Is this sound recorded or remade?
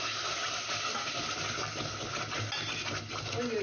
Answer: recorded